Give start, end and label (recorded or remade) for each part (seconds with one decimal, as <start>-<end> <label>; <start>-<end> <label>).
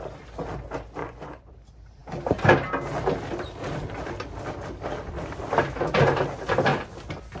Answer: 0.0-1.0 recorded; 1.0-1.5 remade; 1.5-7.4 recorded